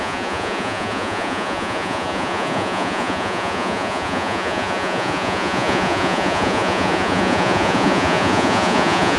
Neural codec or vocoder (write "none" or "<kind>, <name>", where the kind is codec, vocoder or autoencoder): vocoder, Vocos